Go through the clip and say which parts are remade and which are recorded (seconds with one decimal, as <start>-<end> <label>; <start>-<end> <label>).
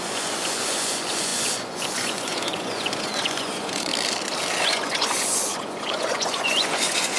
0.0-3.9 remade; 3.9-4.6 recorded; 4.6-7.2 remade